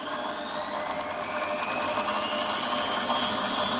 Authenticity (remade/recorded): recorded